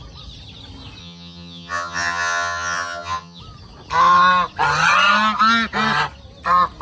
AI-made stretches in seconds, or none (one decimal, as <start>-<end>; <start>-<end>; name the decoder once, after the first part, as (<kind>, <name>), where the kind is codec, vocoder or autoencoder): 1.0-3.4 (vocoder, HiFi-GAN)